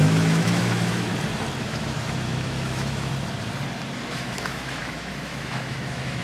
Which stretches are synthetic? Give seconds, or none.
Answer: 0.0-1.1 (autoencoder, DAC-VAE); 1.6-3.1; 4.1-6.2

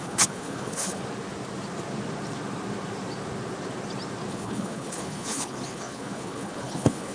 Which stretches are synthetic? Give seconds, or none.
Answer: 0.0-1.0 (codec, HILCodec); 4.3-7.1

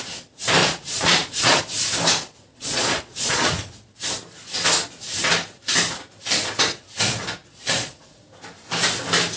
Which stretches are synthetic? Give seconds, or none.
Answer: 0.6-1.6 (vocoder, Vocos); 2.5-3.7; 7.4-8.2

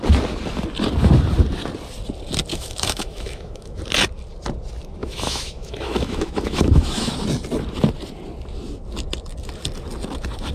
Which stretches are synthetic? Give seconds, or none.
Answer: 2.5-3.8 (autoencoder, DAC-VAE); 5.0-7.1

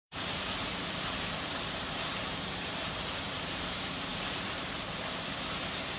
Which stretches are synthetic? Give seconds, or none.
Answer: 0.0-5.1 (vocoder, BigVGAN v2); 5.6-6.0

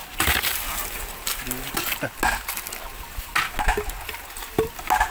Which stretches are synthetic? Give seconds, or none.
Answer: none

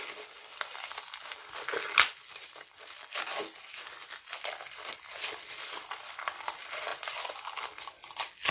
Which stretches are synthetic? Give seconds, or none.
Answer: none